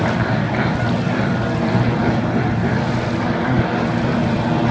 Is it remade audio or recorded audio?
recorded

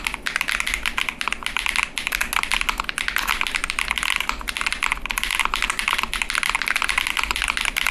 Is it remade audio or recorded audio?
recorded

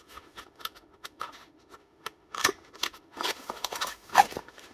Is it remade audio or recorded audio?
remade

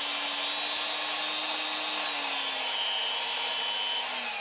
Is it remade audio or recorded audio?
recorded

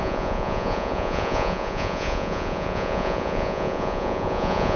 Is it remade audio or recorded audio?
remade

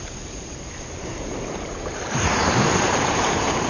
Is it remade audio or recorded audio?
remade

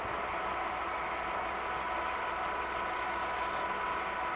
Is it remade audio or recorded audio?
recorded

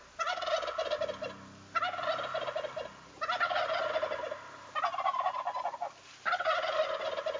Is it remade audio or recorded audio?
recorded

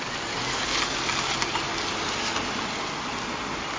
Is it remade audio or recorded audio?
recorded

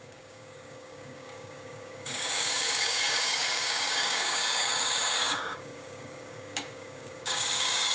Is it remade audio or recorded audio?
remade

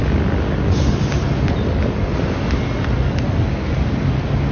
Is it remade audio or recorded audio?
recorded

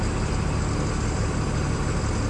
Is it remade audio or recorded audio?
recorded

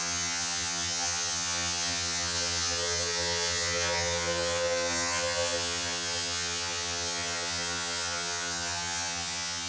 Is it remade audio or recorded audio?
remade